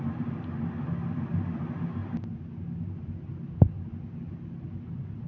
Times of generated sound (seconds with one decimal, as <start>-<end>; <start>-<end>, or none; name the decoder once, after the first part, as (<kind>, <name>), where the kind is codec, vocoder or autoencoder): none